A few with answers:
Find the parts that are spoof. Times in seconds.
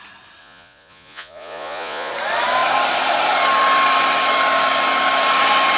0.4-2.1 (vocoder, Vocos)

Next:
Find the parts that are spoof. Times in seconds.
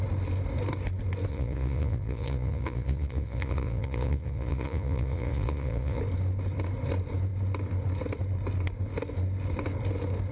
1.3-6.0 (vocoder, Vocos)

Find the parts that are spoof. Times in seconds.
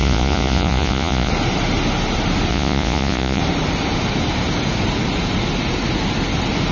0.0-1.3 (vocoder, Vocos); 2.5-3.4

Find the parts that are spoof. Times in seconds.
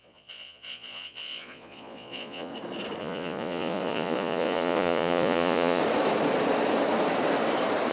0.0-2.5 (vocoder, Vocos); 3.0-5.8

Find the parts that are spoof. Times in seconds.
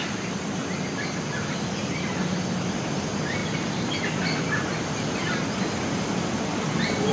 none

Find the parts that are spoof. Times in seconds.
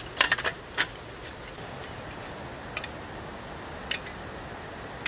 none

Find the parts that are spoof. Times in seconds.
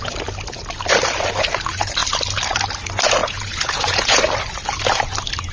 3.2-4.2 (vocoder, Vocos)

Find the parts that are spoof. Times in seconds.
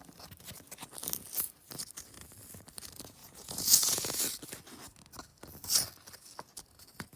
3.2-4.2 (vocoder, Vocos)